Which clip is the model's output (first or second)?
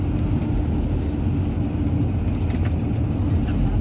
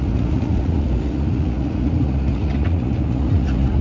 second